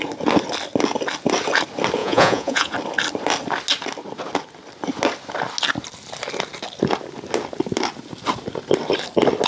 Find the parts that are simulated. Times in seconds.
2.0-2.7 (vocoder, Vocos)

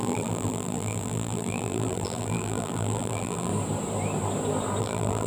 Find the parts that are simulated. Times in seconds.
0.0-3.5 (vocoder, BigVGAN v2); 4.8-5.3

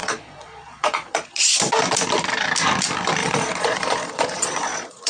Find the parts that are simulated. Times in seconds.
0.0-1.6 (vocoder, Vocos); 3.2-5.1

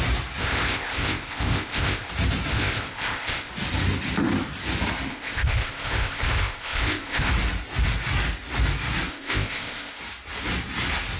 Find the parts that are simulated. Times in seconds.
0.4-2.1 (codec, ZipCodec); 2.5-3.5; 5.1-7.3; 9.1-10.0

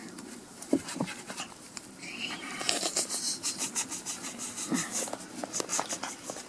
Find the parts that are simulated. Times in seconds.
0.0-3.9 (vocoder, BigVGAN v2)